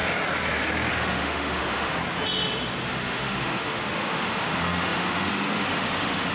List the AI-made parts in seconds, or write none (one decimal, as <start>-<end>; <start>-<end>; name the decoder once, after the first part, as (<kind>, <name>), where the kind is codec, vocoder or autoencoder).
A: 0.9-2.0 (autoencoder, DAC-VAE); 2.8-6.3